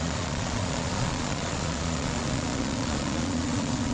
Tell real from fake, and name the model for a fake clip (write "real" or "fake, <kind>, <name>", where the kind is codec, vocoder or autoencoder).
fake, vocoder, Vocos